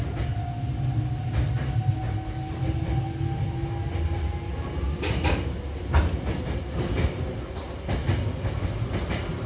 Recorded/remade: recorded